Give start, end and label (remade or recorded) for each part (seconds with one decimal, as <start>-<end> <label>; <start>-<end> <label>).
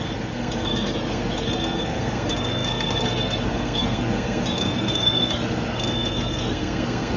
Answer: 0.0-7.2 remade